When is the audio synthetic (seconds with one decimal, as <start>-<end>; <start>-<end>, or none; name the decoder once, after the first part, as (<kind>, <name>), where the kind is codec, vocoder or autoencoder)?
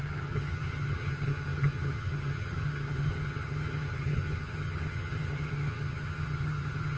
0.0-7.0 (vocoder, HiFi-GAN)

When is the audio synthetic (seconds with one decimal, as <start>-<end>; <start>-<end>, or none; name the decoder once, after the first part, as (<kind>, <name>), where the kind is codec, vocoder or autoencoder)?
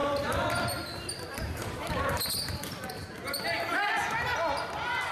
0.0-5.1 (vocoder, BigVGAN v2)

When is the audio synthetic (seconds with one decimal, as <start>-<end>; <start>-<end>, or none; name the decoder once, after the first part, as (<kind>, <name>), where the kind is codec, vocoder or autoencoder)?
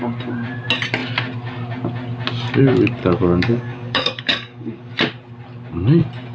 3.0-4.9 (codec, DAC)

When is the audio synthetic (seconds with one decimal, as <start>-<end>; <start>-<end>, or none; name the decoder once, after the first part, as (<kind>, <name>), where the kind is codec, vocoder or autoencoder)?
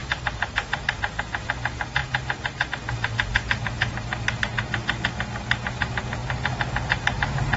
0.0-1.1 (vocoder, BigVGAN v2); 3.3-4.4; 6.2-7.6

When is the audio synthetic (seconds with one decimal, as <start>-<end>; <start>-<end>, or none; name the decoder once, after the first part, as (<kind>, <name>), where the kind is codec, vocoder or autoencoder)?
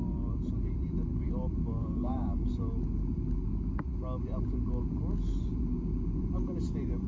1.8-2.5 (codec, DAC)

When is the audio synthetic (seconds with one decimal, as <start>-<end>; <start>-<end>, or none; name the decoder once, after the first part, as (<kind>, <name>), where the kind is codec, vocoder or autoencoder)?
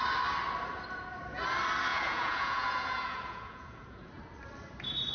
1.9-4.1 (vocoder, Vocos)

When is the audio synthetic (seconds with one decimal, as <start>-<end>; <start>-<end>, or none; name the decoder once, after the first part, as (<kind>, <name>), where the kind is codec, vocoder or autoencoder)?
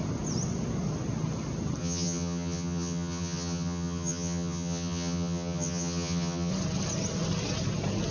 1.8-6.5 (vocoder, HiFi-GAN)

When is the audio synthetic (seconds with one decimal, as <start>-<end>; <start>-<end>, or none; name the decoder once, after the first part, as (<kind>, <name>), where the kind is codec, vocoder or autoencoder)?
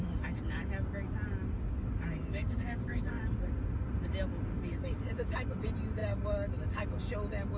2.2-3.2 (codec, DAC)